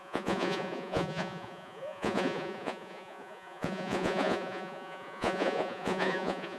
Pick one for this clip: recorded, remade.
remade